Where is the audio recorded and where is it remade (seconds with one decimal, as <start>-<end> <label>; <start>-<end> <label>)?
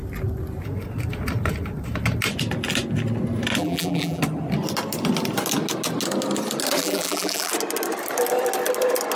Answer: 0.0-3.6 recorded; 3.6-4.2 remade; 4.2-6.8 recorded; 6.8-7.5 remade; 7.5-9.2 recorded